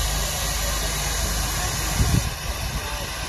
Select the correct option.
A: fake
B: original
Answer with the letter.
B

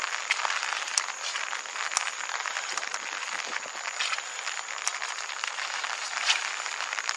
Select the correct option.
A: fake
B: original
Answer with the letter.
A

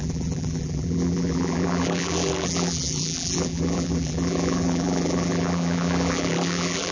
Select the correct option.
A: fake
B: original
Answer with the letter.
A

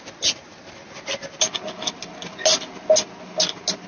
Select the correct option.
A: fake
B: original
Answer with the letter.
B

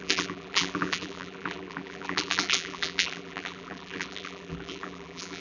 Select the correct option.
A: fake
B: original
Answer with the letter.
A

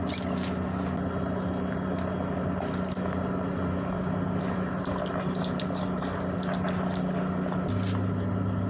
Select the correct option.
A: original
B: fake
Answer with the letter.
A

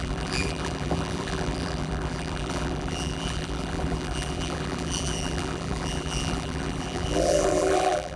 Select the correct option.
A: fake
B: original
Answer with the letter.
A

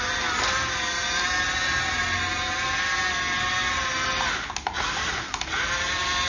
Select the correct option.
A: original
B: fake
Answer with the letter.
A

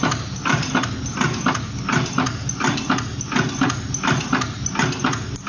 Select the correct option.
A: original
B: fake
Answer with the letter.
A